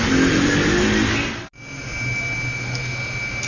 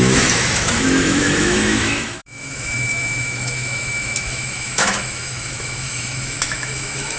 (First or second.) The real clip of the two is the first